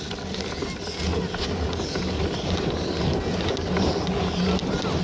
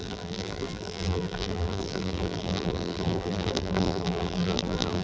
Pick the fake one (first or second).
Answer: second